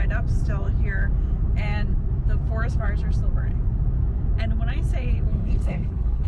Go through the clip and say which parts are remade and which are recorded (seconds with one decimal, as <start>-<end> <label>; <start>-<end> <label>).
0.0-5.3 recorded; 5.3-6.3 remade